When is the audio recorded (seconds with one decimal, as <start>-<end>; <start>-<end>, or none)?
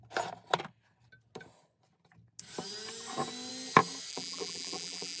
0.0-4.1